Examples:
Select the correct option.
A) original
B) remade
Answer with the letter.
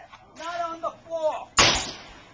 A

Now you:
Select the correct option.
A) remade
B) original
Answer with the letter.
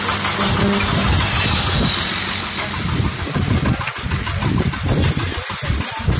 B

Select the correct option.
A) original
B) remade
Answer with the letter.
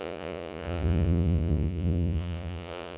B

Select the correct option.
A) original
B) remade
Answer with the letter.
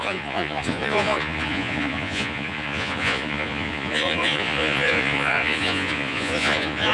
B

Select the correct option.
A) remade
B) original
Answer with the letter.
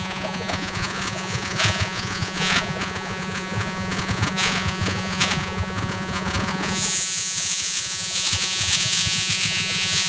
A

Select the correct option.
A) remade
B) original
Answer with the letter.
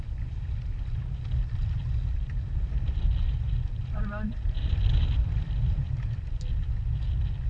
B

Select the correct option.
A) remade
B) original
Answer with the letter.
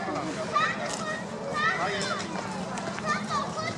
B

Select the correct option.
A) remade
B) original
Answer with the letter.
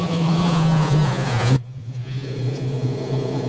A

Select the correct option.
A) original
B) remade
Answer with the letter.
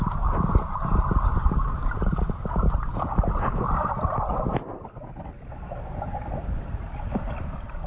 A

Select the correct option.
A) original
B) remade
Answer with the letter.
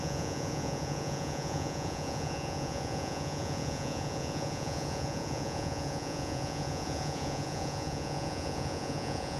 B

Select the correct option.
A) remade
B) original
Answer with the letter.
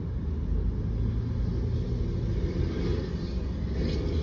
B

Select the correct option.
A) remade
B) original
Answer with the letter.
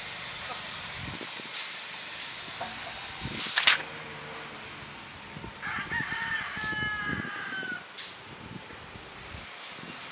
B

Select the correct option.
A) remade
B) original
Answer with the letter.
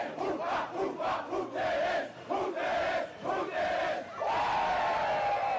B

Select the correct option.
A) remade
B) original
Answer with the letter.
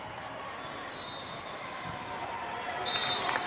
B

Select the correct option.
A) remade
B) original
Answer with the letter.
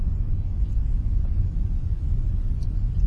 A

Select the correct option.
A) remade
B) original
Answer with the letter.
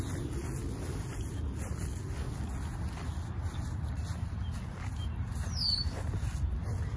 B